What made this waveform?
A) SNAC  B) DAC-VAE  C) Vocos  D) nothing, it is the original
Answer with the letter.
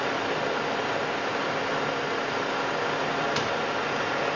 D